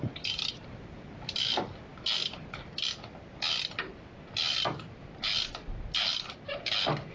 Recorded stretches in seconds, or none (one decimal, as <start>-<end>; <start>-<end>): 0.0-7.1